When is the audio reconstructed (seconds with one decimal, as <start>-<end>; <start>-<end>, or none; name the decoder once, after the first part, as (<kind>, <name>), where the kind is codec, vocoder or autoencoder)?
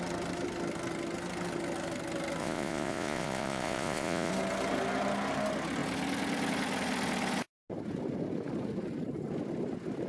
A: 2.4-4.3 (vocoder, Vocos)